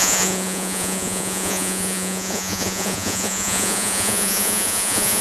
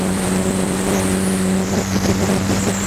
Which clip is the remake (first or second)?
first